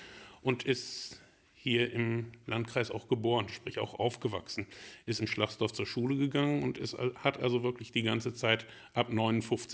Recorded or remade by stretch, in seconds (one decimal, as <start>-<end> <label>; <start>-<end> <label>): 0.0-3.5 recorded; 3.5-5.2 remade; 5.2-9.7 recorded